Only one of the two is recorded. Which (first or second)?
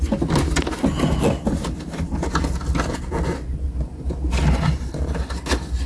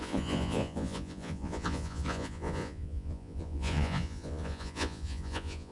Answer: first